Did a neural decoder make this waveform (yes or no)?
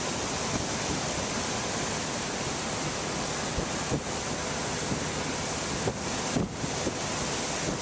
no